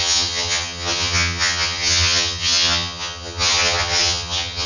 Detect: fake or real fake